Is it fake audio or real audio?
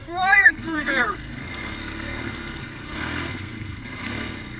fake